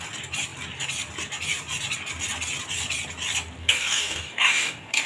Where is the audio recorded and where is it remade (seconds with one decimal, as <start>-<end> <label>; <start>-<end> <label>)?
0.0-3.6 recorded; 3.6-5.1 remade